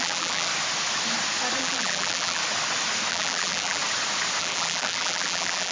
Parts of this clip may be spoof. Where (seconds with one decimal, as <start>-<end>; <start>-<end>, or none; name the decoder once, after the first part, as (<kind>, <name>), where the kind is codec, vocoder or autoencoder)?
0.0-0.5 (vocoder, BigVGAN v2); 1.6-2.4; 3.1-3.8; 4.4-5.7

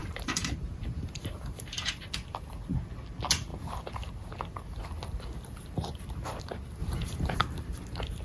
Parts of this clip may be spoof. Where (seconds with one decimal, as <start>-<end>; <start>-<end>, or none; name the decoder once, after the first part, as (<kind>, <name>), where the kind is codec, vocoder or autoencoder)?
0.0-2.0 (vocoder, BigVGAN v2); 6.8-7.4

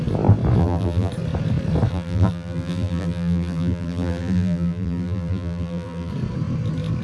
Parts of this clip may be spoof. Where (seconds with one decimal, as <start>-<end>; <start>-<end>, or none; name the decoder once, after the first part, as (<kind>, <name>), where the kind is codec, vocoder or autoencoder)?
0.6-1.1 (vocoder, BigVGAN v2); 1.9-6.1

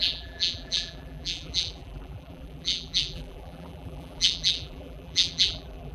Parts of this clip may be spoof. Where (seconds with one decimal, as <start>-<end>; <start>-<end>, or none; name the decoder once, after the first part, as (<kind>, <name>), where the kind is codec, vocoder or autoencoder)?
0.0-5.9 (vocoder, BigVGAN v2)

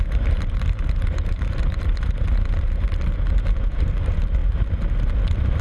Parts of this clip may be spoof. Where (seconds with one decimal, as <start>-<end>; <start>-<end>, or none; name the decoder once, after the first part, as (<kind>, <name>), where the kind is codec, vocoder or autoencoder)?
0.0-4.4 (vocoder, BigVGAN v2)

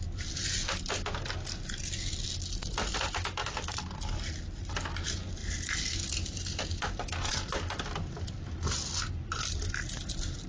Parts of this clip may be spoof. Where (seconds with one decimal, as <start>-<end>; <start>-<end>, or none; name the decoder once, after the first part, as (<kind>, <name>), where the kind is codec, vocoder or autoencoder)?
none

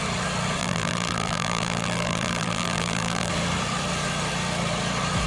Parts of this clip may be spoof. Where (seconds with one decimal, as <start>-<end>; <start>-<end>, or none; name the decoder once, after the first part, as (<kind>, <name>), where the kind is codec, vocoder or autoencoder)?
0.6-3.3 (vocoder, BigVGAN v2)